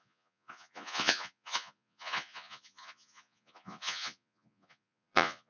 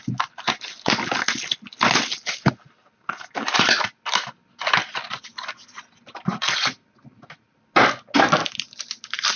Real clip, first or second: second